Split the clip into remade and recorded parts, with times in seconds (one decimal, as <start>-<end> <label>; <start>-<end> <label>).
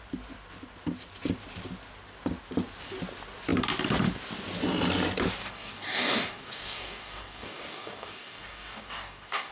0.0-5.4 recorded; 5.4-9.5 remade